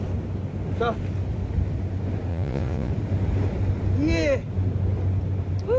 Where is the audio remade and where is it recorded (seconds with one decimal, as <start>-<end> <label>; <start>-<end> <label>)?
0.0-2.3 recorded; 2.3-2.9 remade; 2.9-5.8 recorded